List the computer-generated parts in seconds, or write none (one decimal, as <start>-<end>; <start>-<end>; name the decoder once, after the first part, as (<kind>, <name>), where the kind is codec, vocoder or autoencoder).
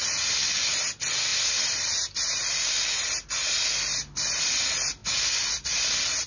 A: none